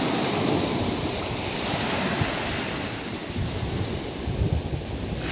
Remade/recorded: recorded